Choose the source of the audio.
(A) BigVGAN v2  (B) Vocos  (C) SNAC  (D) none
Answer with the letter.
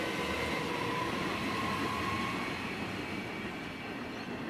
D